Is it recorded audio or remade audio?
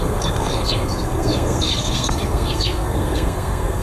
remade